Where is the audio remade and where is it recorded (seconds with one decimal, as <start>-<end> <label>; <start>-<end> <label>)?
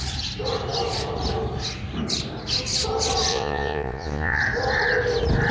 0.0-3.3 recorded; 3.3-4.4 remade; 4.4-5.5 recorded